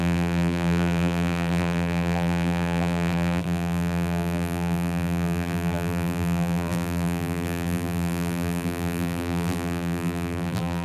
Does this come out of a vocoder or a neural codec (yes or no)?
yes